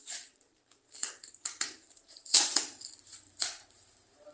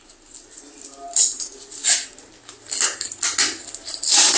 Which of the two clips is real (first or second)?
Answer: second